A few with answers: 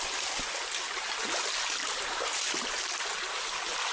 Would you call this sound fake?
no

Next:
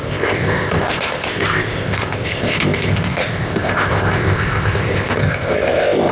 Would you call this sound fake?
yes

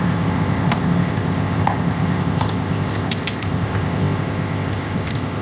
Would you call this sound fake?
yes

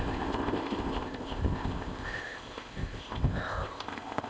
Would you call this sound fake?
yes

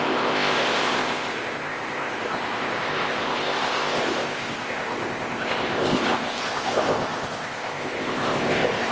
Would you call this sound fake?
yes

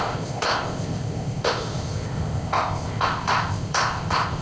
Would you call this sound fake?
yes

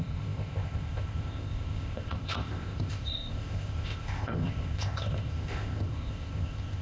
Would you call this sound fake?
yes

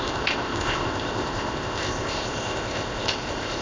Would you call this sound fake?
yes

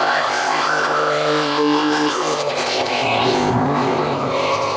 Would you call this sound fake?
yes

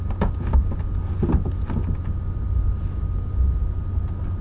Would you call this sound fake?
no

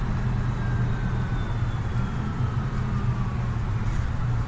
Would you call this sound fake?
no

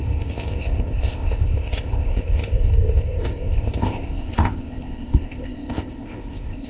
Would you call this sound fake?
yes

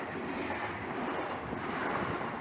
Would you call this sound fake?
no